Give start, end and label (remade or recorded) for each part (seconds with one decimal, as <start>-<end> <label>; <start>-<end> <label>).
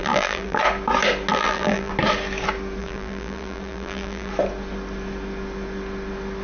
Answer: 0.0-0.6 remade; 0.6-1.3 recorded; 1.3-1.9 remade; 1.9-2.8 recorded; 2.8-4.3 remade; 4.3-6.4 recorded